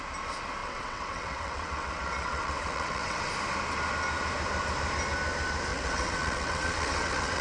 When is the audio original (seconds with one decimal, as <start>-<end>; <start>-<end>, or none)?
0.0-0.6; 3.3-5.7